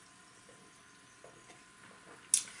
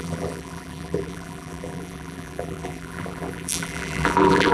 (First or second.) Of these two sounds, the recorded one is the first